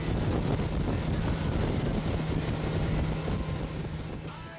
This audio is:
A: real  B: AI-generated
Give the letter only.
A